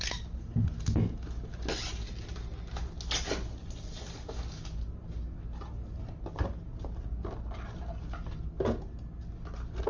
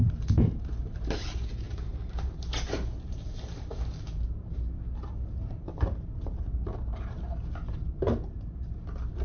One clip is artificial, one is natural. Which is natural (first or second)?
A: first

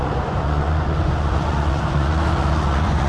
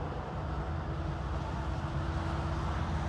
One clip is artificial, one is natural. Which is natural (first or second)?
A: second